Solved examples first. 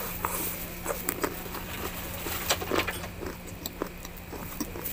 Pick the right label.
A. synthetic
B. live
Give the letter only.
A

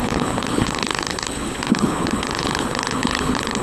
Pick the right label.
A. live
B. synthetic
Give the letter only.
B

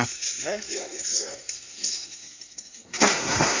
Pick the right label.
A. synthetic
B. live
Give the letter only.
A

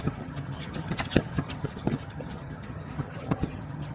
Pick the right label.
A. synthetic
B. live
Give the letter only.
A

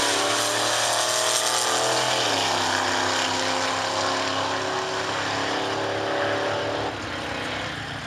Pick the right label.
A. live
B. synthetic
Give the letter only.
A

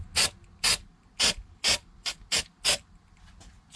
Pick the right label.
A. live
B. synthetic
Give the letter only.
A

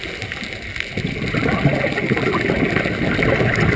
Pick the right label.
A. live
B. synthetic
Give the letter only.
A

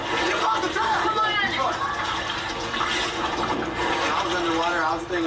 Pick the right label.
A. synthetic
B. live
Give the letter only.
B